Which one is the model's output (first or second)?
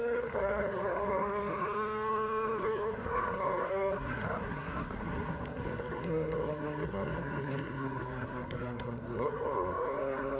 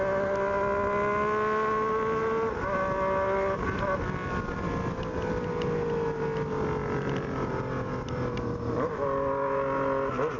first